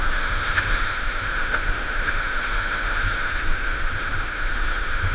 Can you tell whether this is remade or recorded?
remade